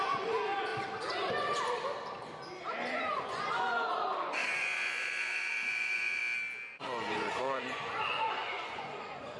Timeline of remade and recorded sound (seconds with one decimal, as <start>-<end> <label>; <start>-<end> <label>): 0.0-0.7 remade; 0.7-2.9 recorded; 2.9-6.2 remade; 6.2-6.8 recorded; 6.8-9.4 remade